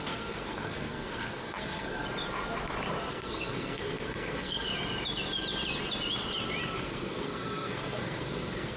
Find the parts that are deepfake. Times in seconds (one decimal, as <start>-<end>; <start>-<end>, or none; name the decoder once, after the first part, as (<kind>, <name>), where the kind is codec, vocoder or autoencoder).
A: 0.0-2.0 (codec, SNAC); 3.1-4.7; 6.8-8.8